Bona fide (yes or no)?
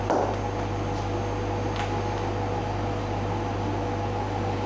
yes